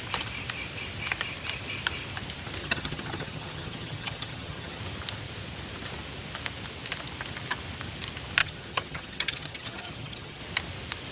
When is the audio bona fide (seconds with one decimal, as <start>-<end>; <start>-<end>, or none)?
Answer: 0.0-2.6; 4.8-8.4; 10.4-11.1